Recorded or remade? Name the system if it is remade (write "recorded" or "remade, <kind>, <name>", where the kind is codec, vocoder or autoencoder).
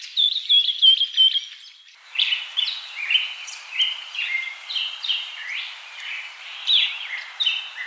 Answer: remade, vocoder, BigVGAN v2